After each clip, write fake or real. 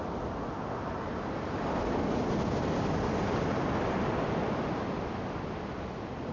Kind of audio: real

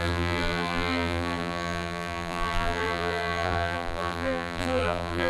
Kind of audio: fake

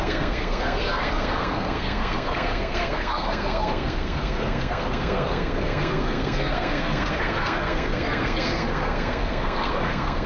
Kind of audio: fake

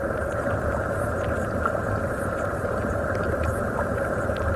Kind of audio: fake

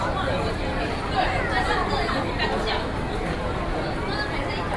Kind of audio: real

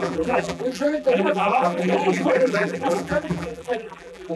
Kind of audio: fake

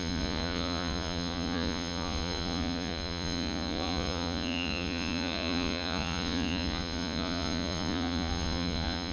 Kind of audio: fake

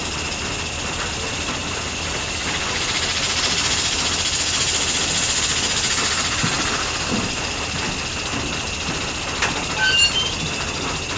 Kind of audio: real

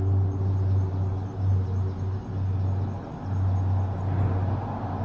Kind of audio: real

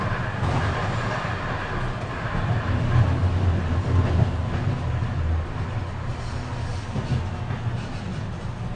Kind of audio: real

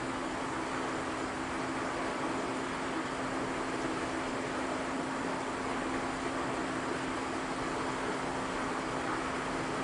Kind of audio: real